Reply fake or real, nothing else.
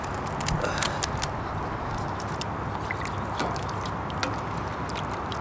real